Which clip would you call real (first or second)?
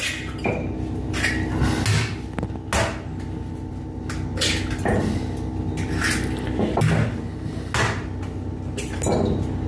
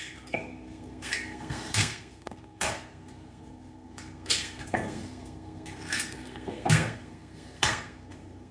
first